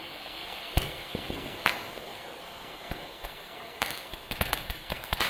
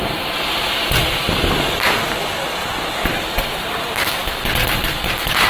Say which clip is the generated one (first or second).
first